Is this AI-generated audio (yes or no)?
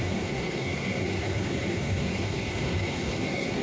yes